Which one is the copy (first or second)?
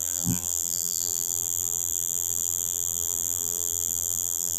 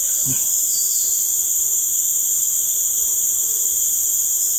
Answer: first